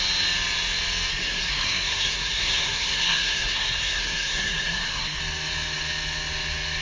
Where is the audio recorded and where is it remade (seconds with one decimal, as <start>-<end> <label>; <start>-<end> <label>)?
0.0-1.1 recorded; 1.1-5.2 remade; 5.2-6.8 recorded